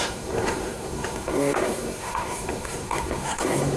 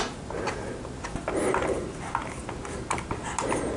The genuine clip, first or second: second